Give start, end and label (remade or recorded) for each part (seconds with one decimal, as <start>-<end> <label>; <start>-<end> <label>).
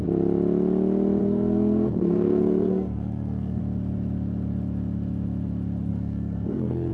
0.0-1.2 recorded; 1.2-3.6 remade; 3.6-5.9 recorded; 5.9-6.9 remade